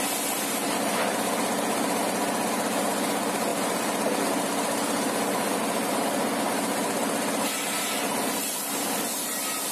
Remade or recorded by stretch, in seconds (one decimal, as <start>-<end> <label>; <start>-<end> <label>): 0.0-9.7 recorded